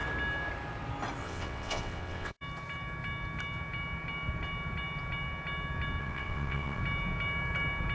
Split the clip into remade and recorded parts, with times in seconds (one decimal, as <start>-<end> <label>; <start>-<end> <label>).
0.0-1.2 recorded; 1.2-2.4 remade; 2.4-6.0 recorded; 6.0-6.8 remade; 6.8-7.9 recorded

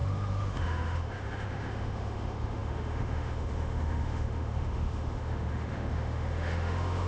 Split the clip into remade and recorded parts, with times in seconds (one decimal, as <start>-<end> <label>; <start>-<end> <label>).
0.0-7.1 remade

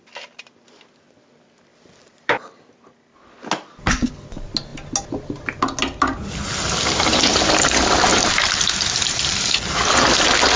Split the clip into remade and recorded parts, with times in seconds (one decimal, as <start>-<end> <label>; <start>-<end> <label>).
0.0-1.7 recorded; 1.7-2.5 remade; 2.5-8.1 recorded; 8.1-9.8 remade; 9.8-10.6 recorded

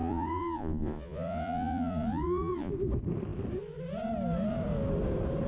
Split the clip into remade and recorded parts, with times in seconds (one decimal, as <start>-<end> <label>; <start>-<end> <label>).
0.0-2.7 remade; 2.7-5.5 recorded

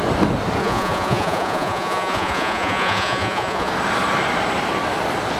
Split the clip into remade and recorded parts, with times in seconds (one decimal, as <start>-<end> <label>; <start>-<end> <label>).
0.0-0.6 recorded; 0.6-3.7 remade; 3.7-5.4 recorded

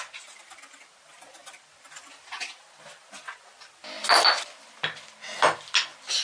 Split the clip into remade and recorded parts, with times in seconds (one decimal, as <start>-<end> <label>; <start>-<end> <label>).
0.0-6.2 recorded

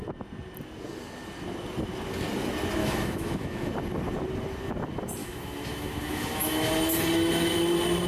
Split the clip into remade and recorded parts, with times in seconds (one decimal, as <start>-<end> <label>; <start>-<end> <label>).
0.0-2.8 recorded; 2.8-3.7 remade; 3.7-5.2 recorded; 5.2-6.7 remade; 6.7-8.1 recorded

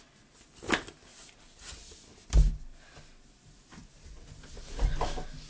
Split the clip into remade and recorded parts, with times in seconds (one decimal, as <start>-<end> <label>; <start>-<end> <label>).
0.0-5.5 recorded